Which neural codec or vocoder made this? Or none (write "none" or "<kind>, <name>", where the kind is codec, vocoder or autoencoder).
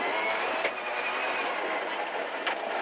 none